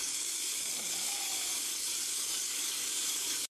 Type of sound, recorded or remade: remade